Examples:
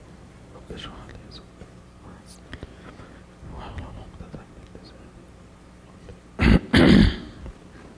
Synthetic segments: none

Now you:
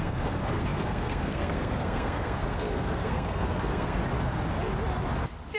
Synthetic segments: 0.0-4.0 (codec, SNAC)

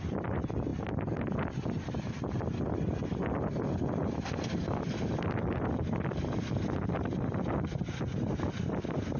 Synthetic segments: 0.0-9.2 (vocoder, BigVGAN v2)